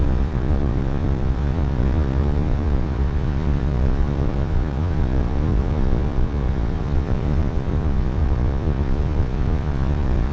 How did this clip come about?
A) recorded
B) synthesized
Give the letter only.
B